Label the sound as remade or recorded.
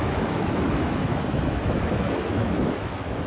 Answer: remade